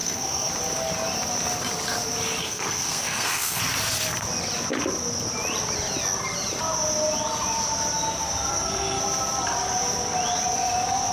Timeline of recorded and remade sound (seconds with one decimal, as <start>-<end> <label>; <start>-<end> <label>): 0.0-0.5 remade; 0.5-2.4 recorded; 2.4-3.6 remade; 3.6-8.5 recorded; 8.5-9.0 remade; 9.0-11.1 recorded